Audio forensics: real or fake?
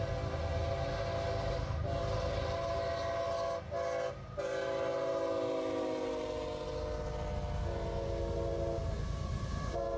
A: real